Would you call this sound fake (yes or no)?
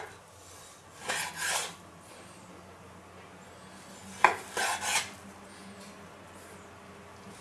no